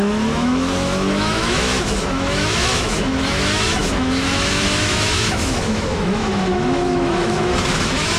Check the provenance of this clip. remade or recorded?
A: remade